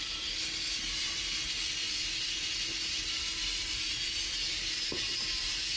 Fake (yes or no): yes